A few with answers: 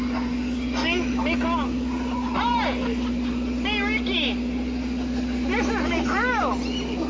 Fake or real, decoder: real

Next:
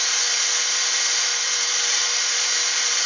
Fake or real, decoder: real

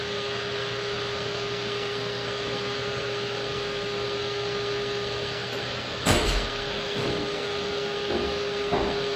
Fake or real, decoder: fake, codec, SNAC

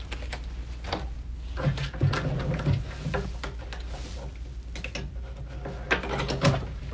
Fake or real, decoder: real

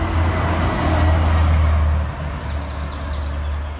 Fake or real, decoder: real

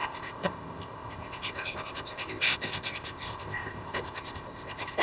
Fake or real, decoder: fake, codec, ZipCodec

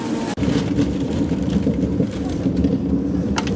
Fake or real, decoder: fake, vocoder, BigVGAN v2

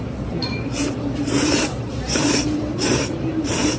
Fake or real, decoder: fake, vocoder, BigVGAN v2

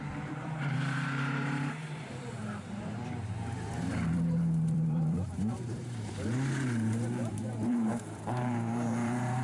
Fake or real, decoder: fake, vocoder, BigVGAN v2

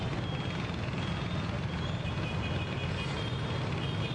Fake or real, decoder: real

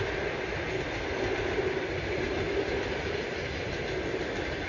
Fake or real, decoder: real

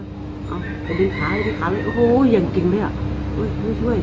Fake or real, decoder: real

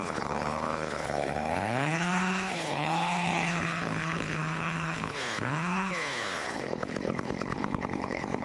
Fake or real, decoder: fake, codec, HILCodec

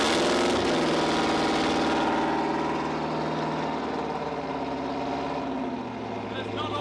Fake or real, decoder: real